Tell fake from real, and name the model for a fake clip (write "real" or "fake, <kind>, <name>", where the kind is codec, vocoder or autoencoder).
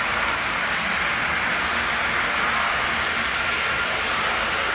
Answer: real